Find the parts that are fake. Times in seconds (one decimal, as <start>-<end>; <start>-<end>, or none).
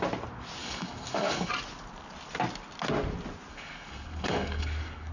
0.6-1.5; 3.5-5.1